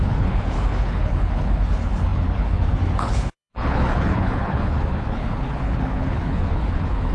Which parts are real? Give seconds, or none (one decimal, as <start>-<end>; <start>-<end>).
none